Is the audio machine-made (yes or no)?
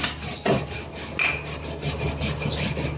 no